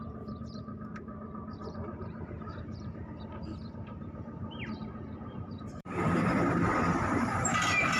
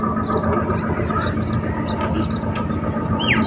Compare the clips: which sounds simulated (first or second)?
first